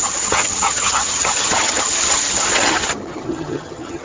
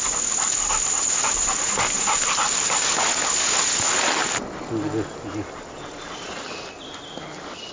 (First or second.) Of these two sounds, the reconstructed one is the first